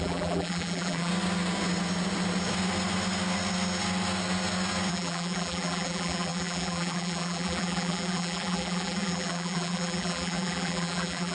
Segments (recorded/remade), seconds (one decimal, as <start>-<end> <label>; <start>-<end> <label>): 0.0-1.1 remade; 1.1-4.9 recorded; 4.9-11.3 remade